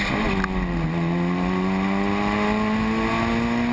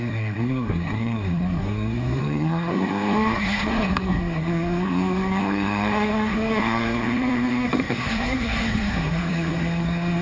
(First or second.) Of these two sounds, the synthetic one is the second